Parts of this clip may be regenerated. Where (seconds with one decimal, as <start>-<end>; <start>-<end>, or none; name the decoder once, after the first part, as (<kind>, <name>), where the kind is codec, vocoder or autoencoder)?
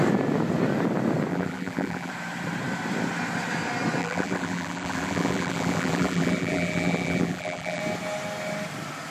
1.3-2.1 (vocoder, BigVGAN v2); 4.0-7.8